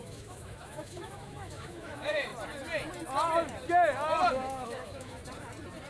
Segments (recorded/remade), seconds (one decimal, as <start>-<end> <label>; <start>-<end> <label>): 0.0-2.3 remade; 2.3-4.3 recorded; 4.3-5.2 remade; 5.2-5.9 recorded